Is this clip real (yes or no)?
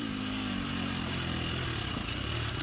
yes